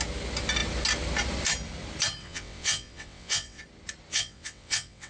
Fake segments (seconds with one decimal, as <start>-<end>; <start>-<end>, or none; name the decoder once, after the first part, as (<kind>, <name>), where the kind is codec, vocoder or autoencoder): 2.2-3.6 (vocoder, WaveNeXt); 4.1-5.1